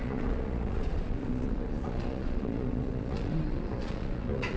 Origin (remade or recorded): remade